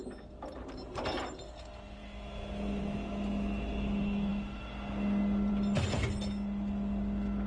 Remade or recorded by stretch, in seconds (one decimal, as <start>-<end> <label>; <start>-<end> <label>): 0.0-7.5 recorded